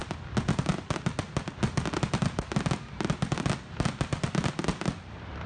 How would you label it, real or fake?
real